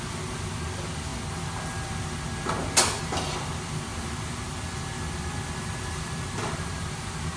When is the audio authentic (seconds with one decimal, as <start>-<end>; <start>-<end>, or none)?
0.0-7.4